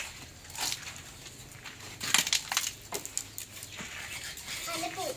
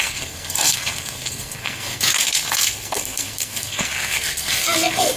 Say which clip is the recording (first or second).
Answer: first